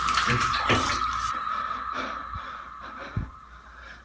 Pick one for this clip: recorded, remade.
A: recorded